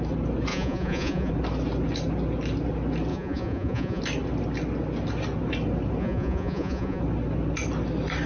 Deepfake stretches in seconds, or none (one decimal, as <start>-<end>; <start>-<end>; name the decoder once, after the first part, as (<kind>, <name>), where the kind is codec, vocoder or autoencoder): 0.5-1.3 (vocoder, Vocos); 3.1-4.0; 6.0-7.0